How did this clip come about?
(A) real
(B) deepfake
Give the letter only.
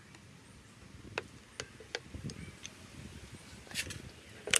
A